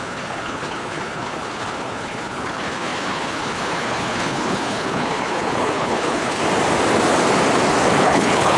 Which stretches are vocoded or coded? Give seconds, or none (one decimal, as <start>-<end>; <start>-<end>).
0.0-6.4; 8.0-8.6